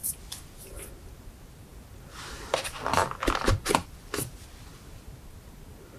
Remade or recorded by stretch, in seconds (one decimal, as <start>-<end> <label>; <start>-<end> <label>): 0.0-6.0 recorded